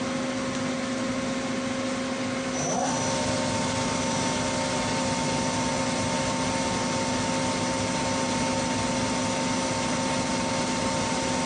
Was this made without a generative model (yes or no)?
yes